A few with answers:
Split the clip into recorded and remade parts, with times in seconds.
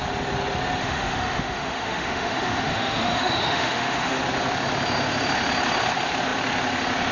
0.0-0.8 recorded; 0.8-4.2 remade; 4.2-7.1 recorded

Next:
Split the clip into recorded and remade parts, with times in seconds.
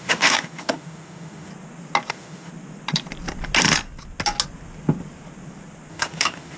0.0-1.5 remade; 1.5-2.1 recorded; 2.1-2.5 remade; 2.5-5.9 recorded; 5.9-6.6 remade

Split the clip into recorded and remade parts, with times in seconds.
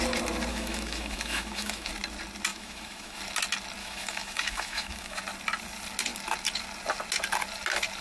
0.0-0.5 recorded; 0.5-1.9 remade; 1.9-2.5 recorded; 2.5-3.2 remade; 3.2-3.8 recorded; 3.8-5.2 remade; 5.2-8.0 recorded